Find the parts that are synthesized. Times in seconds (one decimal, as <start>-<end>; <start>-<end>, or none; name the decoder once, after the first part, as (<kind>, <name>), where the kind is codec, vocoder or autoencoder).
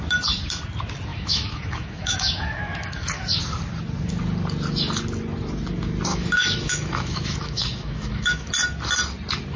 1.1-3.4 (autoencoder, DAC-VAE); 6.1-8.5